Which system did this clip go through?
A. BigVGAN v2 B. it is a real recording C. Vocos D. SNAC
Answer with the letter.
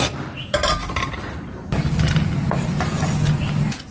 B